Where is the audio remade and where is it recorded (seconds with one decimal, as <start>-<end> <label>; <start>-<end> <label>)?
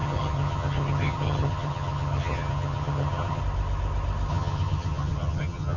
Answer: 0.0-3.4 remade; 3.4-4.3 recorded; 4.3-5.8 remade